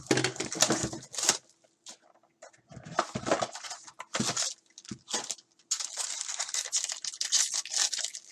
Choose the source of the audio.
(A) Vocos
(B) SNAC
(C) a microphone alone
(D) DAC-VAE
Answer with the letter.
C